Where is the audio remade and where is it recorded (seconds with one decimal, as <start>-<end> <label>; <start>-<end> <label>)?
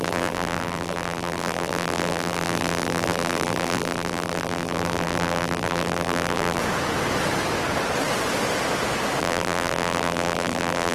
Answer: 0.0-6.6 remade; 6.6-9.2 recorded; 9.2-10.9 remade